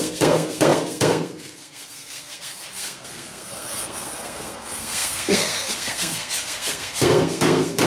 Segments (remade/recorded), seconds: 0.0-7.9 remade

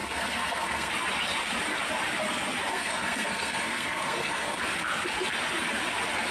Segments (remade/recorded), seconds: 0.0-0.9 remade; 0.9-2.7 recorded; 2.7-4.6 remade; 4.6-6.3 recorded